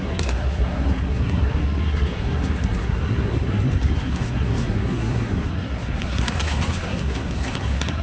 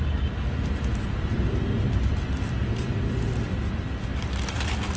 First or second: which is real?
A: second